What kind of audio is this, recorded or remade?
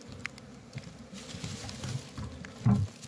recorded